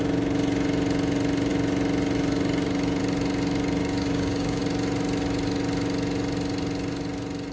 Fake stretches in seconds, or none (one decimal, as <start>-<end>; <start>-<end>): 3.8-4.6